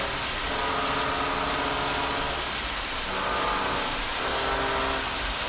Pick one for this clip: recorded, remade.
recorded